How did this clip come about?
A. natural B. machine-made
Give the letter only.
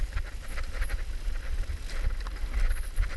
A